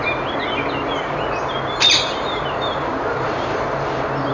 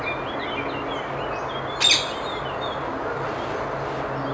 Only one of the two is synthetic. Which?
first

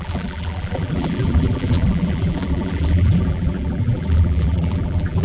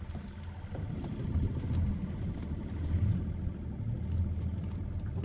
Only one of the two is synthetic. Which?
first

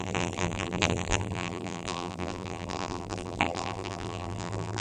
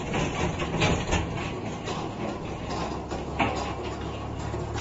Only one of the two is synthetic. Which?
first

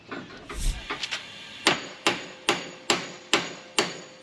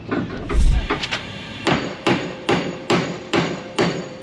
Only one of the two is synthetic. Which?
second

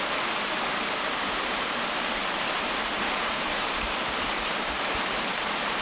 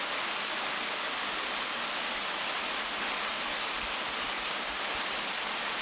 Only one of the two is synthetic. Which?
first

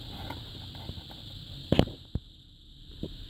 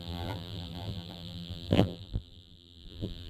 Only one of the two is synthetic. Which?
second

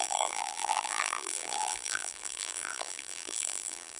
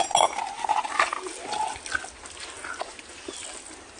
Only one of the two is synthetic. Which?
first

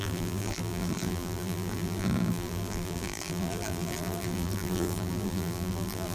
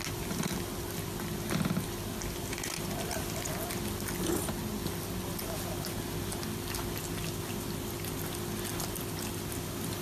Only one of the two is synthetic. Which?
first